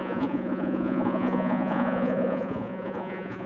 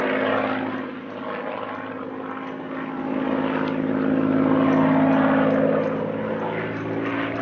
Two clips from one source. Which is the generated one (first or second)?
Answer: first